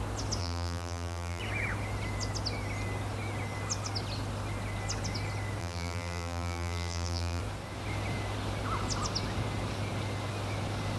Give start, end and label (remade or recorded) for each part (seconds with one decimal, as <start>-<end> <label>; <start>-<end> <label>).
0.0-0.4 recorded; 0.4-1.4 remade; 1.4-5.6 recorded; 5.6-7.4 remade; 7.4-11.0 recorded